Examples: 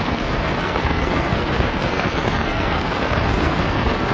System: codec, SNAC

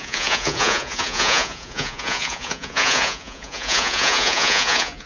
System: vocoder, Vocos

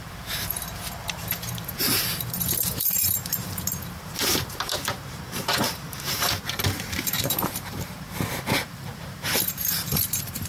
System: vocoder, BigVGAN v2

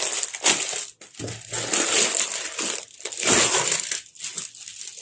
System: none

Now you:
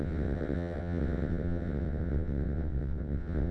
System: vocoder, WaveNeXt